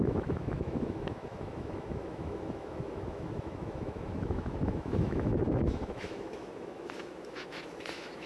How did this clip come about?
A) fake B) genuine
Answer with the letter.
A